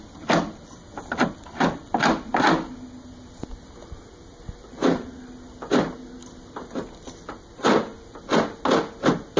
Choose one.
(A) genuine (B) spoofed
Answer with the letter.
A